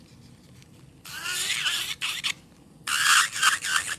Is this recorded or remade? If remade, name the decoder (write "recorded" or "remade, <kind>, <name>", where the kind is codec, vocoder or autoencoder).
remade, vocoder, BigVGAN v2